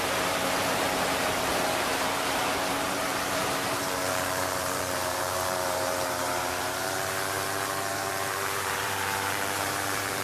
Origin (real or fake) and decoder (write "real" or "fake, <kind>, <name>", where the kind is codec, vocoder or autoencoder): fake, vocoder, BigVGAN v2